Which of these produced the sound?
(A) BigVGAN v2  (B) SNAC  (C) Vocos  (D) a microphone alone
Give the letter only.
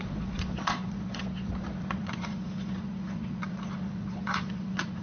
C